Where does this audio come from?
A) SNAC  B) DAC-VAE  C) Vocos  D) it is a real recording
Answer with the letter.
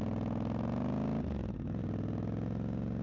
D